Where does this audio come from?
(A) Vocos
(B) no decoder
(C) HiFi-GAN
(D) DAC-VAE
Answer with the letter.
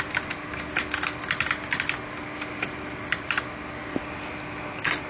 B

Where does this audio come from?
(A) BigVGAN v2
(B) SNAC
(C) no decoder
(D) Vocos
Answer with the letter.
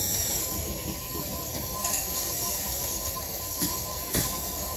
B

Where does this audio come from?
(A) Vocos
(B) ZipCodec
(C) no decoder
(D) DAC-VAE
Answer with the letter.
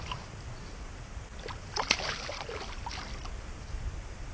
C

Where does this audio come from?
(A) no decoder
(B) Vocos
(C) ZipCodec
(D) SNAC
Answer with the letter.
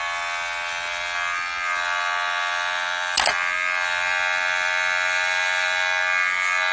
A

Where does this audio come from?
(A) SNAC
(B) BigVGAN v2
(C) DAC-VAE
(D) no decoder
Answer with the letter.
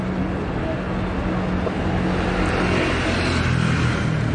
D